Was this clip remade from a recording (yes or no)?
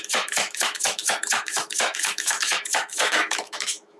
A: yes